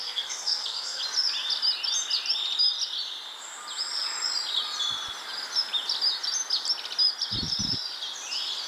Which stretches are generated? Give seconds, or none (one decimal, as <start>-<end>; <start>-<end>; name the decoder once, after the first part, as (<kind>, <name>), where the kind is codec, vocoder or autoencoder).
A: 0.0-1.0 (codec, SNAC)